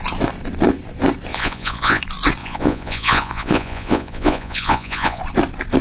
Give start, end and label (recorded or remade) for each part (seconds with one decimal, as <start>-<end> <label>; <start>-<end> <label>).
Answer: 0.0-1.3 recorded; 1.3-2.0 remade; 2.0-2.4 recorded; 2.4-5.2 remade; 5.2-5.8 recorded